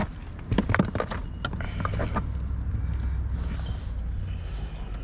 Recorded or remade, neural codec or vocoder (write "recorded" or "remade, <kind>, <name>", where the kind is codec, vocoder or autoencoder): recorded